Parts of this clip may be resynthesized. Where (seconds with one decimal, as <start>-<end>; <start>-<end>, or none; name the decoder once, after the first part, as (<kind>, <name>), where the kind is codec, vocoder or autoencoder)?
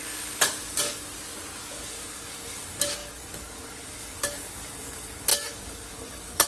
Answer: 0.0-1.1 (codec, DAC); 1.6-6.5